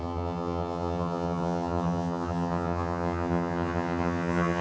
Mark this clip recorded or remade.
remade